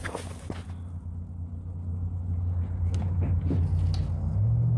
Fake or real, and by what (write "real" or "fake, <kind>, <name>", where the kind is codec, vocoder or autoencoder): real